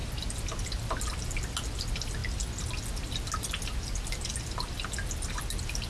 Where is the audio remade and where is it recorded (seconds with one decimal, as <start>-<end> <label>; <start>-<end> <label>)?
0.0-5.9 recorded